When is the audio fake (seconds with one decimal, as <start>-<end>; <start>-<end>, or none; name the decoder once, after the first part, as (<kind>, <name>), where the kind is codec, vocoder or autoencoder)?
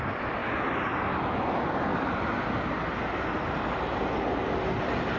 none